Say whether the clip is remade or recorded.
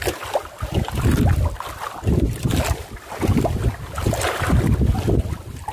recorded